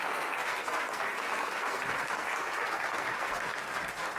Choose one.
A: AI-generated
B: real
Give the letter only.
A